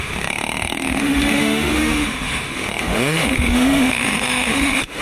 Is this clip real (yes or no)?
no